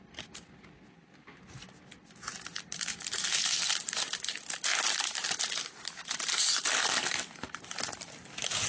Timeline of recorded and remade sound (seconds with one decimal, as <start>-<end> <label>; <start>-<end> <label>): 0.0-8.7 recorded